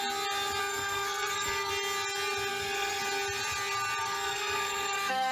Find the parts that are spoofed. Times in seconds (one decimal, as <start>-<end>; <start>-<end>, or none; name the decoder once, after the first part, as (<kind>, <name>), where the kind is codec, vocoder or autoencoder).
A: 0.6-1.7 (codec, SNAC); 2.5-3.0; 4.0-5.3